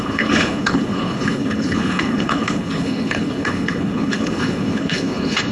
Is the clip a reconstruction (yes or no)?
yes